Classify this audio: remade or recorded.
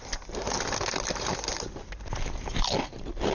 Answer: recorded